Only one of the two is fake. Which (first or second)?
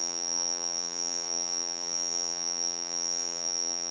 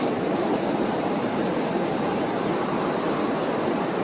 first